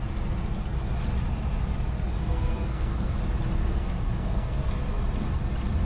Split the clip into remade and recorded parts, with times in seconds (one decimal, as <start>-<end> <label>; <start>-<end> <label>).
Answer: 0.0-2.1 recorded; 2.1-3.2 remade; 3.2-3.6 recorded; 3.6-4.7 remade; 4.7-5.8 recorded